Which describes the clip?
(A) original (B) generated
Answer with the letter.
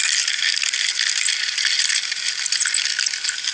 A